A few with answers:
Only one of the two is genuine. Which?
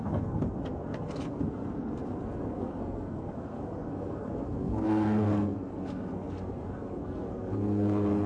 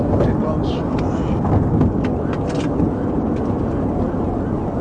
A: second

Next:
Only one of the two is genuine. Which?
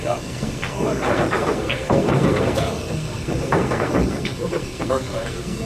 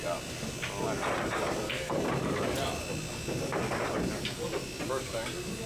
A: second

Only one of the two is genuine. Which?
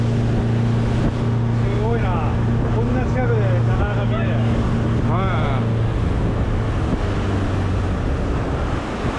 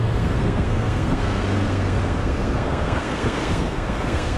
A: first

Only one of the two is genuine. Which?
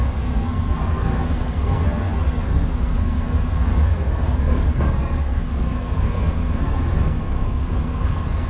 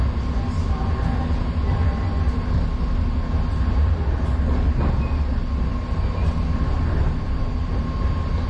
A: second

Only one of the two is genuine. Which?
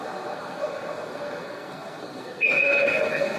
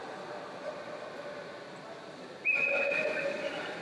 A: second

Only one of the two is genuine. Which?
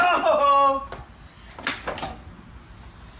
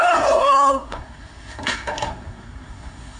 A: first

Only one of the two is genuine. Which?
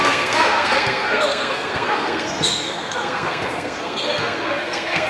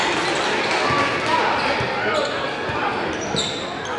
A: second